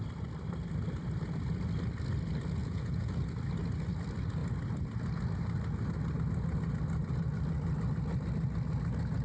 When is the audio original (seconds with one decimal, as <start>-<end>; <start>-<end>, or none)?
0.0-2.6; 3.1-9.2

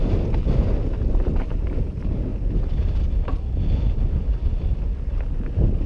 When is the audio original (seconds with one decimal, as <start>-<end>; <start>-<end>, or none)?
0.0-5.9

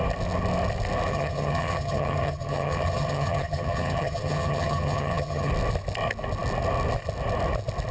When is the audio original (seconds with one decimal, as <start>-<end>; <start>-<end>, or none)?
0.0-1.1; 5.5-7.9

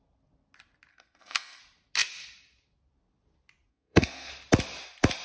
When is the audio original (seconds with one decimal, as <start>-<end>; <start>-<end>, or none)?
0.0-0.9; 1.6-3.7; 4.3-5.2

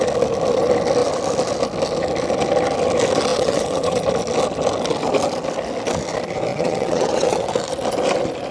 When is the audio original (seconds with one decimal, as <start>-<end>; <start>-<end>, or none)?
0.0-3.3; 4.0-6.5; 7.5-8.5

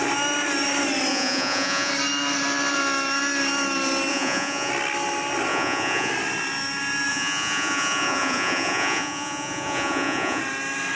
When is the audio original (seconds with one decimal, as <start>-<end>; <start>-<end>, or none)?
0.0-1.1; 1.9-4.1; 4.7-5.5; 6.1-7.1; 10.4-11.0

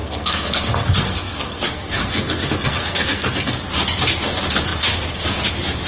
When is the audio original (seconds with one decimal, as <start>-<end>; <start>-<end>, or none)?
3.5-5.9

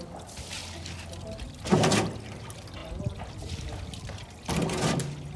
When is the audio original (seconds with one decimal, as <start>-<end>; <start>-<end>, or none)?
0.0-5.4